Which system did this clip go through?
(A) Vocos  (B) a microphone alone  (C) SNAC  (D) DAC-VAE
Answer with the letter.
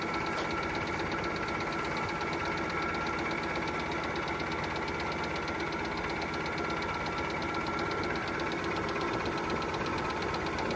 B